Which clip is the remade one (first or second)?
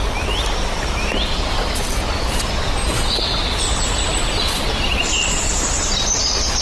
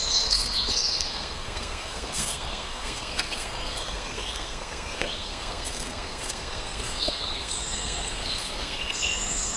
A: second